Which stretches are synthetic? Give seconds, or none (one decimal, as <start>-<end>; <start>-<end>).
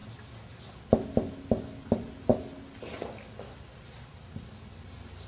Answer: none